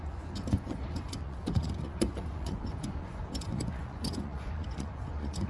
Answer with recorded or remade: remade